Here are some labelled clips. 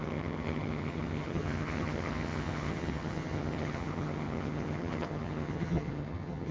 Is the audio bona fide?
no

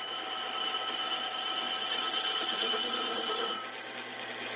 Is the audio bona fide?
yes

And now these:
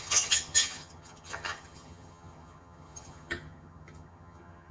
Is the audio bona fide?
no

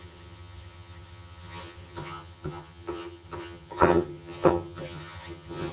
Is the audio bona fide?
no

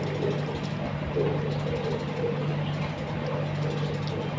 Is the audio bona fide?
yes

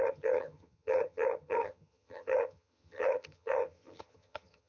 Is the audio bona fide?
no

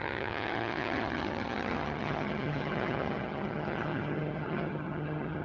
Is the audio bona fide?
no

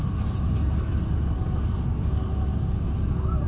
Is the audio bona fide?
yes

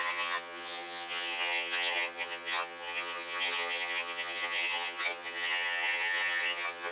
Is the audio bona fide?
no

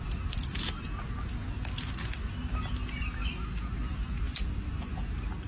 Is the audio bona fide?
yes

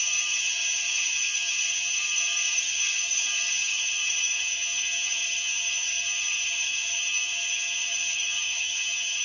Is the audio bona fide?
no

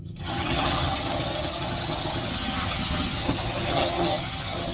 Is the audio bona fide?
no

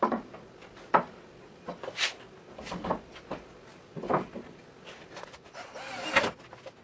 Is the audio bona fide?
yes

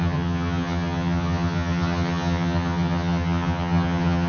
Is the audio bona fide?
no